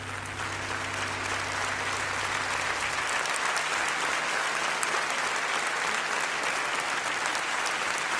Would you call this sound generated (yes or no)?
no